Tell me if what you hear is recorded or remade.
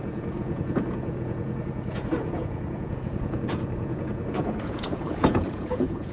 remade